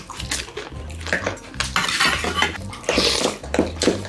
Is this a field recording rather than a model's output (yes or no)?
yes